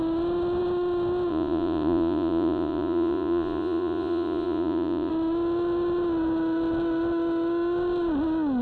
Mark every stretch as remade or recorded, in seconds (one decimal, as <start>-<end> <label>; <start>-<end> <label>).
0.0-1.3 recorded; 1.3-5.1 remade; 5.1-8.6 recorded